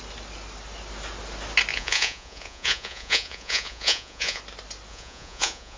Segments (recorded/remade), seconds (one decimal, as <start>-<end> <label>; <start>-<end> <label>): 0.0-1.7 recorded; 1.7-4.4 remade; 4.4-4.9 recorded; 4.9-5.8 remade